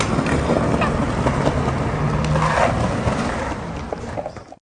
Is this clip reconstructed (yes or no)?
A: no